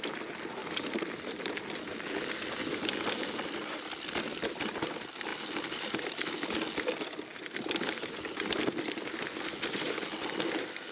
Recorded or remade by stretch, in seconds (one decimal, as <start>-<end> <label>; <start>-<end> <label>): 0.0-0.6 recorded; 0.6-1.8 remade; 1.8-10.9 recorded